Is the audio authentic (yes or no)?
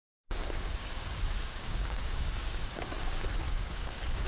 no